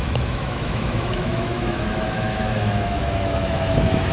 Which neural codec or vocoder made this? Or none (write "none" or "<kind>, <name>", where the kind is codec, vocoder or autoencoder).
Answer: autoencoder, DAC-VAE